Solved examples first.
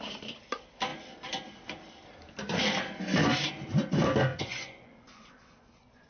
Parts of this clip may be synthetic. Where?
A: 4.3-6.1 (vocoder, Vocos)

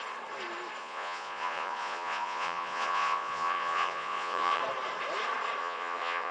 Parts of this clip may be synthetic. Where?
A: 0.8-4.6 (vocoder, Vocos); 5.6-6.3

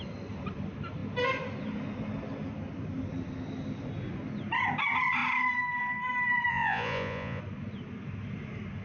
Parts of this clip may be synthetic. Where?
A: 6.5-7.4 (vocoder, Vocos)

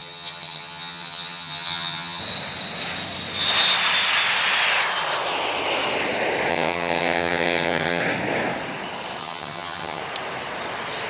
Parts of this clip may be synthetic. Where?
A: 0.0-2.2 (vocoder, HiFi-GAN); 6.5-8.0; 9.2-10.0